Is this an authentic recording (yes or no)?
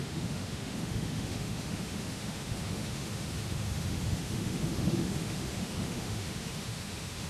no